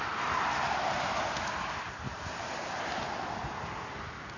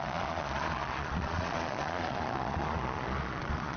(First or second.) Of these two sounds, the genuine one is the first